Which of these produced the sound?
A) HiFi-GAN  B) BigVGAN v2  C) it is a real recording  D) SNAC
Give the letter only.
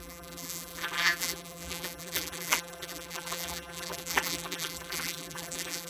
B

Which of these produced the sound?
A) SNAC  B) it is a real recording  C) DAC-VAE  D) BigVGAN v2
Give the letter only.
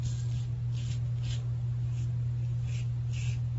B